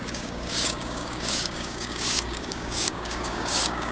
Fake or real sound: fake